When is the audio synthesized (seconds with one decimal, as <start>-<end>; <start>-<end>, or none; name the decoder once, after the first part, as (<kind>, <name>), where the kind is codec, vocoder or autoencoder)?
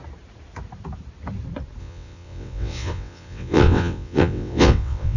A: 1.8-5.2 (vocoder, WaveNeXt)